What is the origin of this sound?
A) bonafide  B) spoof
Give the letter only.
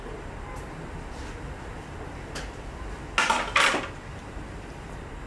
A